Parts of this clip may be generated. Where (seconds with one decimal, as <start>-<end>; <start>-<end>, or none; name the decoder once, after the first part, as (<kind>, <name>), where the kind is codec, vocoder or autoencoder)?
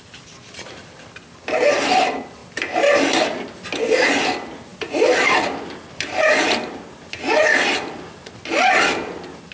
none